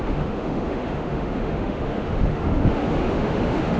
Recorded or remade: remade